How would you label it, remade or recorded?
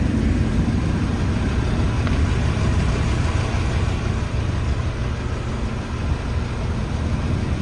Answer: recorded